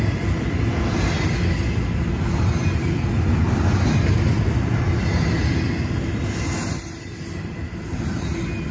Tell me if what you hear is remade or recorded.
recorded